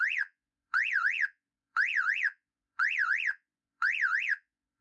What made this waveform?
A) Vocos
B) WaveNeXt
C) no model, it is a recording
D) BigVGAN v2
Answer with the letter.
A